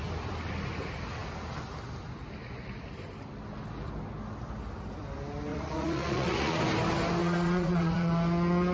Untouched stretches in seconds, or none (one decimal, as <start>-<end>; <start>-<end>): 0.0-5.5; 6.6-7.2; 8.1-8.7